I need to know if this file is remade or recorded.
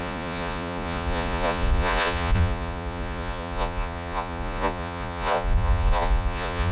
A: remade